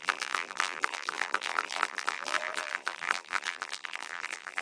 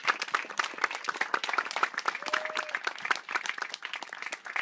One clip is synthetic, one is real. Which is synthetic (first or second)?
first